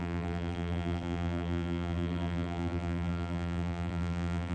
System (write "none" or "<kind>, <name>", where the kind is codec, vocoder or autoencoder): vocoder, BigVGAN v2